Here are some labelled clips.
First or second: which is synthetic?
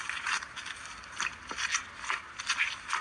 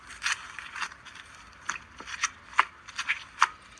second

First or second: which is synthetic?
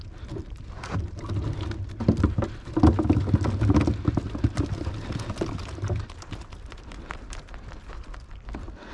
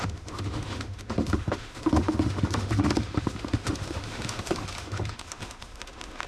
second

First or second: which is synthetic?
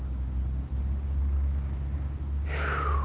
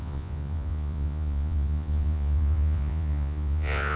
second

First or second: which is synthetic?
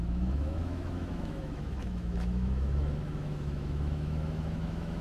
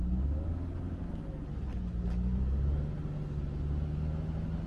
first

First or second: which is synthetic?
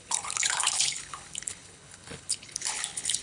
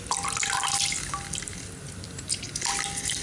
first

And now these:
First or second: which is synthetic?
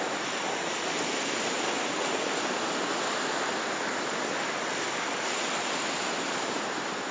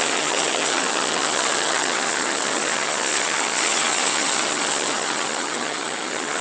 second